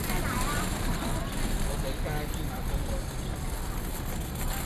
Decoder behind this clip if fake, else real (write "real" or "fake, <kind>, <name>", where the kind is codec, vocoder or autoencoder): real